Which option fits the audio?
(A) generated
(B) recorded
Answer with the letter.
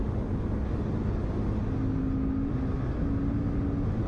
B